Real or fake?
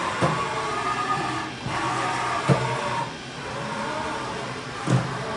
real